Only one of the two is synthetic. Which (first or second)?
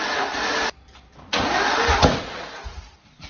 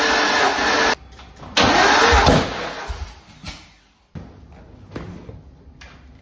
first